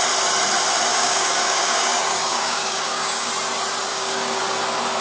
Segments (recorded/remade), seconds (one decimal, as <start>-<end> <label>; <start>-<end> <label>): 0.0-0.9 recorded; 0.9-3.3 remade; 3.3-3.9 recorded; 3.9-4.4 remade; 4.4-5.0 recorded